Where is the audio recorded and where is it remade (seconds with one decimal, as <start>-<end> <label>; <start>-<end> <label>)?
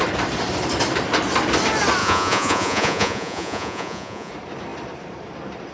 0.0-2.0 recorded; 2.0-4.3 remade; 4.3-5.7 recorded